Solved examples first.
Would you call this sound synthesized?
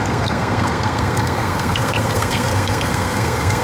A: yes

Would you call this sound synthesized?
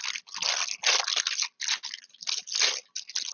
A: no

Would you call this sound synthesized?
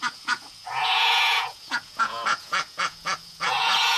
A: yes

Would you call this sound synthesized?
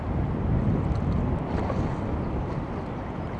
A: no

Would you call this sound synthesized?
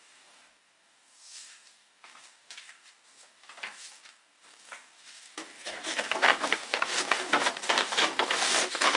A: yes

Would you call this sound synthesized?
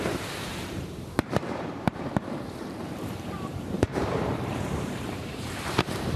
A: yes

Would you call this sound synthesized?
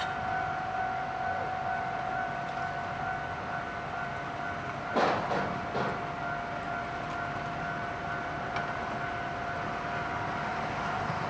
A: no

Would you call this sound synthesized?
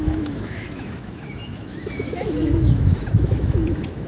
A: yes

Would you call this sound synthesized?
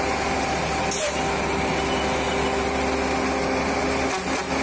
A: no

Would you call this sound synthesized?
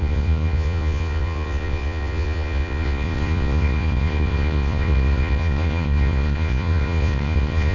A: yes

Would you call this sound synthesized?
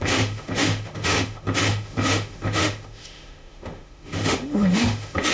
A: yes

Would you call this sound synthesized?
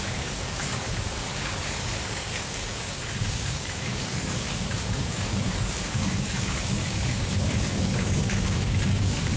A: yes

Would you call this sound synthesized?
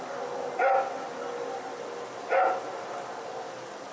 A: no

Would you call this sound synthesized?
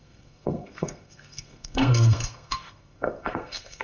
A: yes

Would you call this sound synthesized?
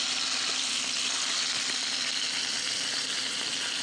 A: no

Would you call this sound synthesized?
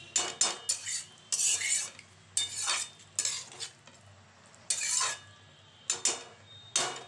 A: no